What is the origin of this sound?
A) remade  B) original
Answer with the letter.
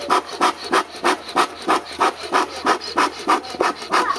A